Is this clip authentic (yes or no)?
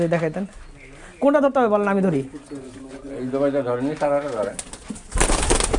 yes